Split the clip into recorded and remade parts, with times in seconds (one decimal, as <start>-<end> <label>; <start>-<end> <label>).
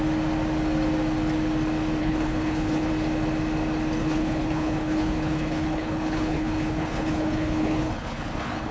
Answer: 0.0-2.0 recorded; 2.0-2.9 remade; 2.9-4.0 recorded; 4.0-8.7 remade